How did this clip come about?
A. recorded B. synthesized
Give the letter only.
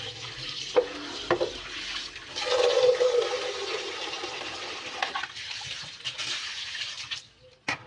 A